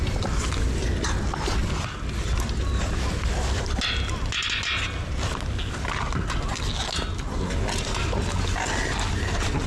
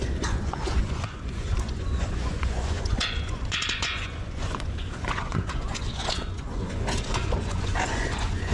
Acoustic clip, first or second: first